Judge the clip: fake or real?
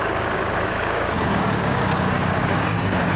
fake